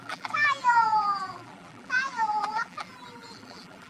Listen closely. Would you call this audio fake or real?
fake